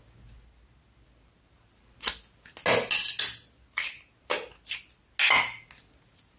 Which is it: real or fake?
real